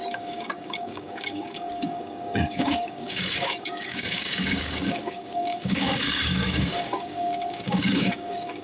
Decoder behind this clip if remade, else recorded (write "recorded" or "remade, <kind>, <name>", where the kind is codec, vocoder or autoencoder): remade, codec, DAC